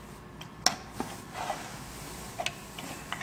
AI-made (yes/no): no